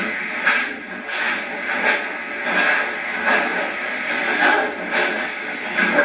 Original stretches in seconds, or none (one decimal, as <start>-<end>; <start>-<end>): 0.0-6.0